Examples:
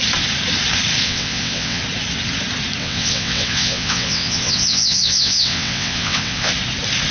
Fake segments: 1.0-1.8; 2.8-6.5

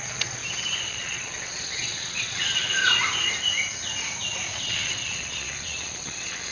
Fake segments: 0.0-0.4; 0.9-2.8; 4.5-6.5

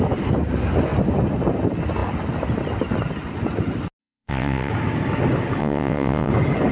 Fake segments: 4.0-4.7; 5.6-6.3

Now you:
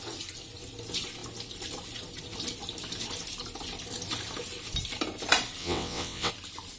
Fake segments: 5.6-6.3